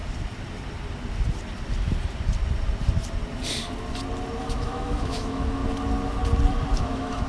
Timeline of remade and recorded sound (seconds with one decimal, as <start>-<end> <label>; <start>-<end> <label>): 0.0-4.4 recorded; 4.4-5.6 remade; 5.6-6.8 recorded; 6.8-7.3 remade